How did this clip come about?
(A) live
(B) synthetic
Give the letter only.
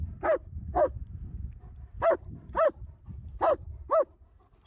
A